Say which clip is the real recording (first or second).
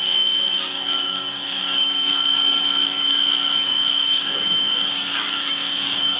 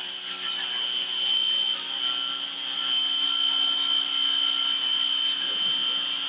second